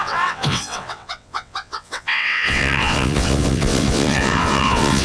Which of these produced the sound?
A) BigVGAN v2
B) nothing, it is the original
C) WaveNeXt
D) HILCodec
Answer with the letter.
C